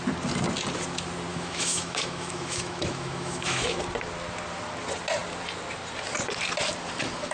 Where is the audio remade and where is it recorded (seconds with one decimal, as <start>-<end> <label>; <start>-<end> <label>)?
0.0-1.3 recorded; 1.3-3.8 remade; 3.8-7.3 recorded